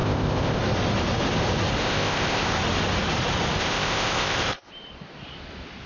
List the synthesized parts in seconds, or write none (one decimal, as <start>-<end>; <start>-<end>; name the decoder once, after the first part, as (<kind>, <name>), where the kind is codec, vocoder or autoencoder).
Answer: 0.0-0.6 (codec, ZipCodec); 1.8-2.6; 3.6-4.7